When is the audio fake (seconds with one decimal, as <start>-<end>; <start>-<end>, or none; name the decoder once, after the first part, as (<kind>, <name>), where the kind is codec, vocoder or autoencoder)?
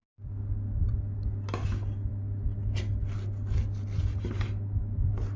none